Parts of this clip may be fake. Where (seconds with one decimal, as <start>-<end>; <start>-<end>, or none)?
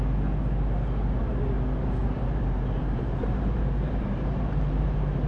2.0-5.3